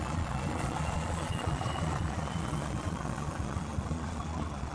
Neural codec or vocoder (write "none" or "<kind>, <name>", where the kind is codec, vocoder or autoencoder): vocoder, Vocos